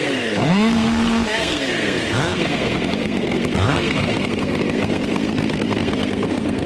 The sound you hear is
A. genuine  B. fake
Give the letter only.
B